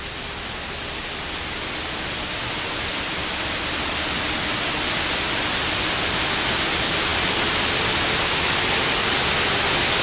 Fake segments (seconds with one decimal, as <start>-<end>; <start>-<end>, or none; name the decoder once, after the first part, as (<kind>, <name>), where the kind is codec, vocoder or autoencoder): none